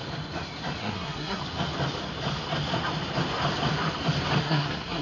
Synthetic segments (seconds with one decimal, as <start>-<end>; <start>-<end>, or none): 0.8-1.4; 4.4-5.0